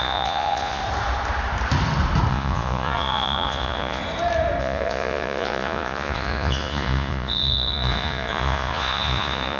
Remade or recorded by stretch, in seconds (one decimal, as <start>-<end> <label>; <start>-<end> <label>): 0.0-0.8 remade; 0.8-2.3 recorded; 2.3-4.0 remade; 4.0-4.6 recorded; 4.6-9.6 remade